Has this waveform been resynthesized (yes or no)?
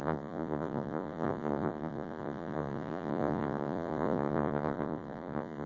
yes